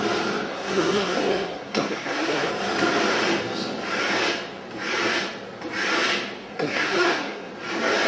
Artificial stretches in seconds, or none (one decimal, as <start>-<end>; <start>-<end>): 0.5-2.5; 6.4-7.5